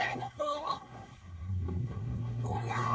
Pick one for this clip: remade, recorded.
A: remade